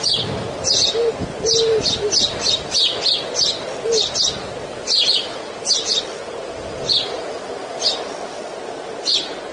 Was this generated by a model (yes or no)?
no